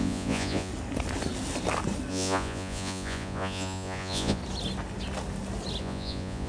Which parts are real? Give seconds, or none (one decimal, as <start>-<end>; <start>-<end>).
0.7-2.1; 4.4-5.8